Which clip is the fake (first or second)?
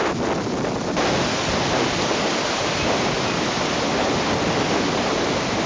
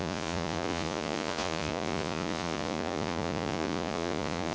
second